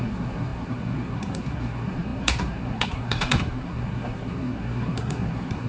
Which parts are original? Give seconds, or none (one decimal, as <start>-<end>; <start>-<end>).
none